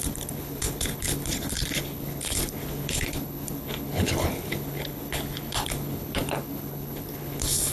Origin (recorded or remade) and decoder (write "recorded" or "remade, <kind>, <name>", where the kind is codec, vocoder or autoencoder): remade, codec, HILCodec